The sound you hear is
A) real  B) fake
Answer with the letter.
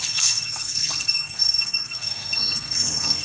B